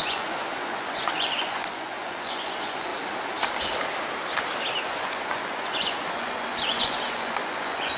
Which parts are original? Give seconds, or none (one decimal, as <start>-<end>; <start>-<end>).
2.9-4.8